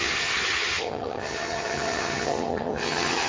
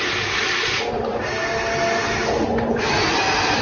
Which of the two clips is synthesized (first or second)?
first